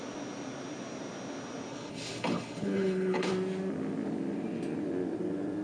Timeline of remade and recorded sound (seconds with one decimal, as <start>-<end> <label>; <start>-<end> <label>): 0.0-1.7 recorded; 1.7-3.3 remade; 3.3-5.6 recorded